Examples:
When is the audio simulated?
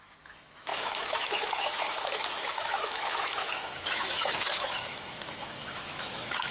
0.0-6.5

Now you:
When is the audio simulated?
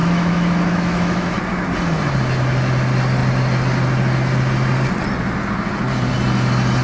0.0-1.4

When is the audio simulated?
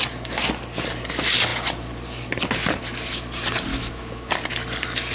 3.7-4.3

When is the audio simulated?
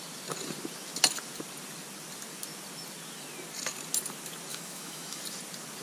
4.5-5.2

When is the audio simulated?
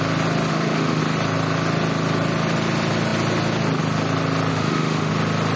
0.5-1.0; 4.5-5.1